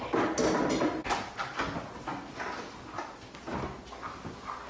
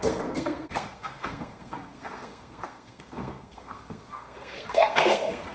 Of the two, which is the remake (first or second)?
second